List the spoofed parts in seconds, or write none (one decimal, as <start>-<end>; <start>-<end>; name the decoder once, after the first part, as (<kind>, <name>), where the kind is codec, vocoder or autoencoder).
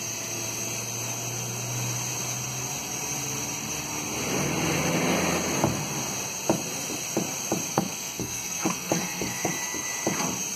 7.7-9.5 (codec, SNAC)